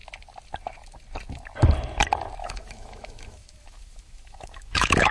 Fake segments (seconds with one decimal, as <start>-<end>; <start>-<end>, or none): 2.4-5.1